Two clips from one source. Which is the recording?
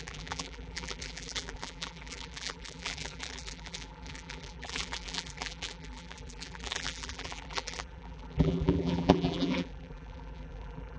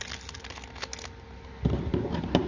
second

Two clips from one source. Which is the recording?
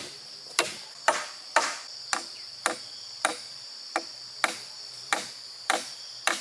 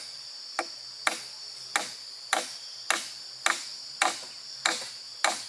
second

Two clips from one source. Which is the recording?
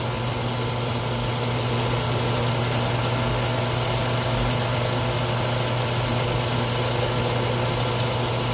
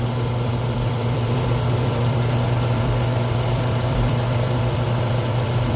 first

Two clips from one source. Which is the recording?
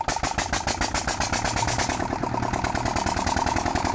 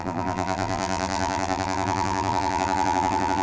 first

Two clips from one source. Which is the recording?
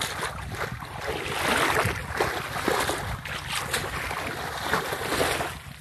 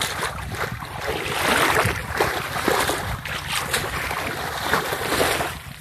first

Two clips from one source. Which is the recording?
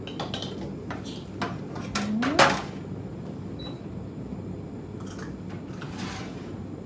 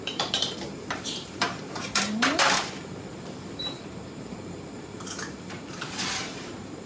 first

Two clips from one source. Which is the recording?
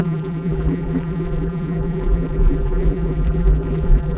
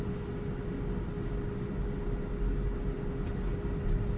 second